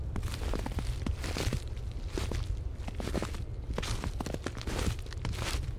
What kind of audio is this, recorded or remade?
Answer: remade